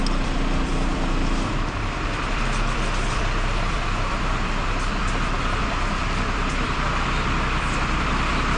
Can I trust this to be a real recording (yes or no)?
no